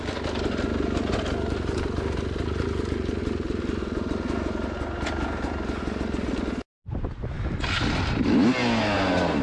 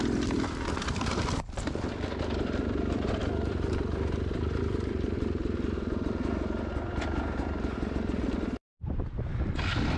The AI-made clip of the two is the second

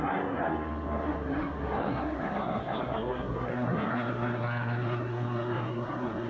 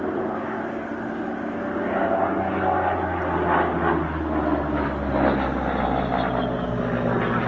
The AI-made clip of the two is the first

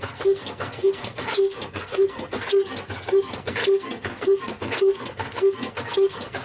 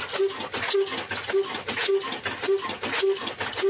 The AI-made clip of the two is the first